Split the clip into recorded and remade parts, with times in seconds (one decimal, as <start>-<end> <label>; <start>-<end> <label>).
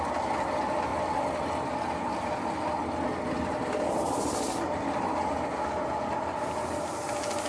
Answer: 0.0-7.5 recorded